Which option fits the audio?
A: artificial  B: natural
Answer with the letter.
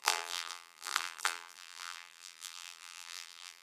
A